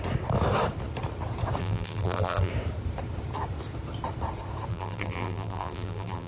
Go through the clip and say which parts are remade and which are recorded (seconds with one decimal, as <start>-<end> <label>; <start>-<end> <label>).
0.0-1.6 recorded; 1.6-2.5 remade; 2.5-4.7 recorded; 4.7-6.3 remade